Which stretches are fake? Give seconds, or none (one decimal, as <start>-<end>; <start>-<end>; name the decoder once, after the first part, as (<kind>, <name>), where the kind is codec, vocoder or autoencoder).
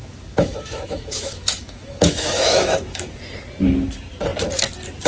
0.0-3.1 (autoencoder, DAC-VAE)